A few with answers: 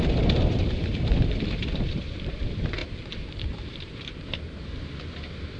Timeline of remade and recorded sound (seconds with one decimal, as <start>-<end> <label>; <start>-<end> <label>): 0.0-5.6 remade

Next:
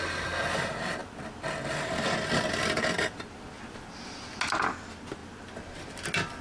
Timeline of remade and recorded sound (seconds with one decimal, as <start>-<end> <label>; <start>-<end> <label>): 0.0-6.4 recorded

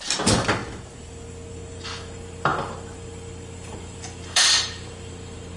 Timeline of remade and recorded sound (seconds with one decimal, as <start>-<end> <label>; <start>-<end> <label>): 0.0-0.6 remade; 0.6-1.5 recorded; 1.5-5.6 remade

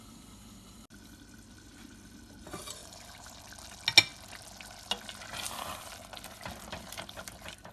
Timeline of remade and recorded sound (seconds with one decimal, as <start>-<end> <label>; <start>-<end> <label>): 0.0-2.8 recorded; 2.8-3.4 remade; 3.4-7.7 recorded